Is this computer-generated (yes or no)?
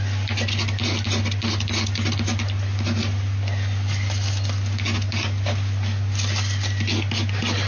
no